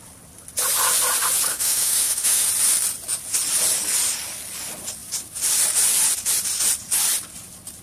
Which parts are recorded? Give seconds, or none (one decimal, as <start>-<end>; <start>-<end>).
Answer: 0.0-1.5; 2.5-7.8

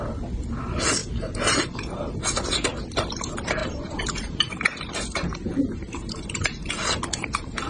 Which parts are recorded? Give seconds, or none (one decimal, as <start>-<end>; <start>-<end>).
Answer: 0.0-1.0; 2.2-3.6; 6.7-7.7

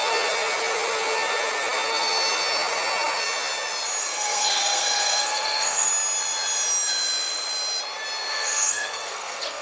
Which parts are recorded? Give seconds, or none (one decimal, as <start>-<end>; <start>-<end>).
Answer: 0.0-4.0; 5.9-8.3

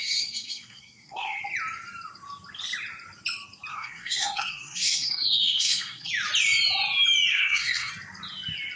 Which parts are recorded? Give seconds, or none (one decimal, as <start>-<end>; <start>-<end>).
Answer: 1.4-3.7; 6.1-7.3; 7.9-8.8

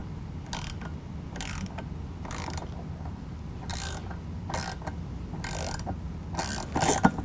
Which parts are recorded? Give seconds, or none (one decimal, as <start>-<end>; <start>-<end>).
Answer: 0.0-7.2

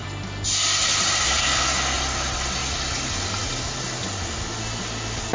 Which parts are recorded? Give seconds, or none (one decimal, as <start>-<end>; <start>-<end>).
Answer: 0.0-5.3

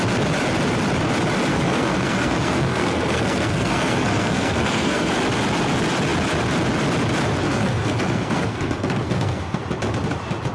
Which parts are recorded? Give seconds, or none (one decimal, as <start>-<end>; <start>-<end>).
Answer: 0.0-1.5; 5.1-7.5; 9.6-10.5